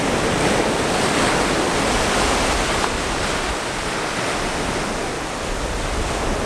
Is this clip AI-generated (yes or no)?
no